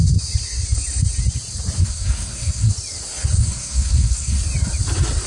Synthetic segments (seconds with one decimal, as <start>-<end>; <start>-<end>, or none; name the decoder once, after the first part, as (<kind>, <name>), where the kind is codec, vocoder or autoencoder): 1.8-2.7 (codec, SNAC); 3.4-4.4

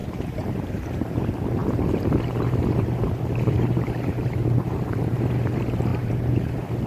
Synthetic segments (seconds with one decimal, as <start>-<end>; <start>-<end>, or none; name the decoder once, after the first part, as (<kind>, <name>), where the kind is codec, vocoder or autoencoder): 0.0-1.1 (vocoder, BigVGAN v2); 1.6-5.3; 5.9-6.5

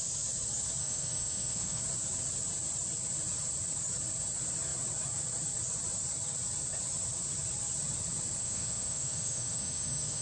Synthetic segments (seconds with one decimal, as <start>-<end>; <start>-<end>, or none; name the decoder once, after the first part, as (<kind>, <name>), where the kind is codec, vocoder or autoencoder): 0.8-1.8 (autoencoder, DAC-VAE); 8.4-10.2